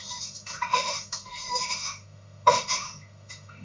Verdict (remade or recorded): remade